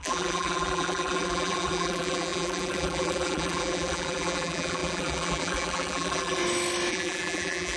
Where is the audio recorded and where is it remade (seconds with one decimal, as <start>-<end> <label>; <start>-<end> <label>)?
0.0-6.4 remade; 6.4-6.9 recorded; 6.9-7.8 remade